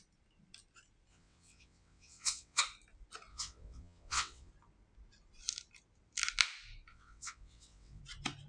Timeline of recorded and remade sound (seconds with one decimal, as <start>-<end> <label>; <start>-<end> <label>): 0.0-1.1 recorded; 1.1-2.6 remade; 2.6-3.3 recorded; 3.3-4.5 remade; 4.5-6.9 recorded; 6.9-8.0 remade; 8.0-8.5 recorded

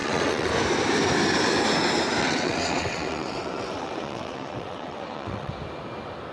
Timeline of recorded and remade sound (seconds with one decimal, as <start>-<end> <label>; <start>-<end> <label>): 0.0-0.5 remade; 0.5-2.2 recorded; 2.2-5.5 remade; 5.5-6.3 recorded

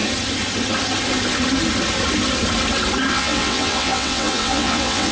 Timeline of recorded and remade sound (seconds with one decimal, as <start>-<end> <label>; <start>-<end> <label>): 0.0-3.1 recorded; 3.1-5.1 remade